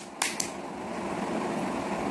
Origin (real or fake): real